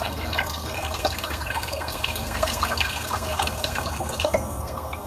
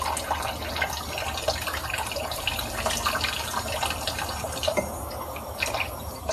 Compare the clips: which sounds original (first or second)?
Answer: second